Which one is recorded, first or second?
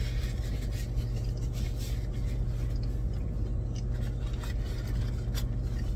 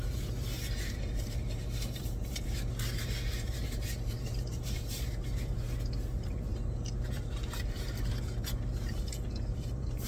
first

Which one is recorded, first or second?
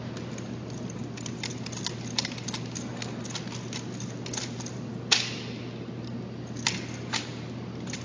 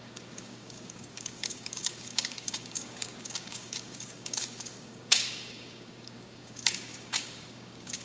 first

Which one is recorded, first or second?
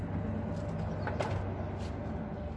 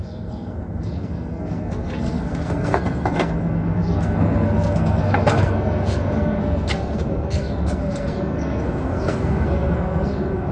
first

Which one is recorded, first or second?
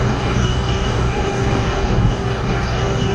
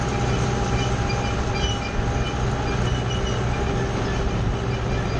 second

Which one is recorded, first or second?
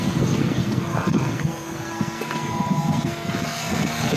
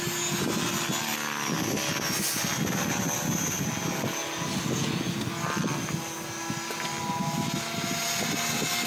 second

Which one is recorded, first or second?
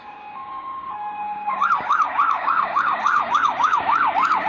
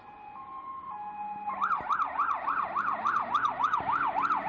second